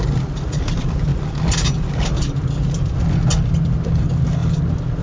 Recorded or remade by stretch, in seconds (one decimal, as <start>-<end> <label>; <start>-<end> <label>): 0.0-5.0 recorded